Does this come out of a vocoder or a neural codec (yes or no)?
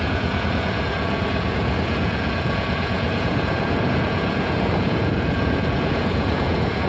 yes